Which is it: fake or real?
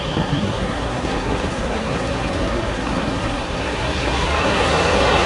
fake